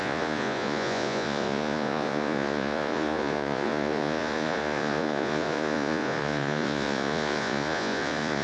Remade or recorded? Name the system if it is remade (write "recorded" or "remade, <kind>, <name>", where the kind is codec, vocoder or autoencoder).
remade, vocoder, Vocos